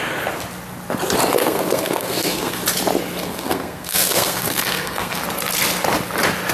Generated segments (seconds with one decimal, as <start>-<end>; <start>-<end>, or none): 1.4-2.6; 3.2-5.2